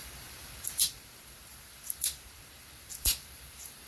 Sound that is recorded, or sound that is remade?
remade